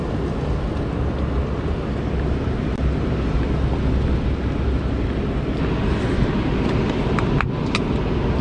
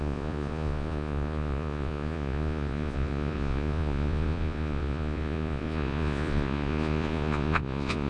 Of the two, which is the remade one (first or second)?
second